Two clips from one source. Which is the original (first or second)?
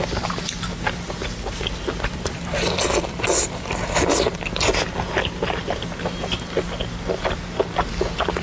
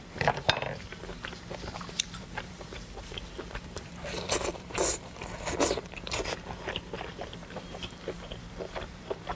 first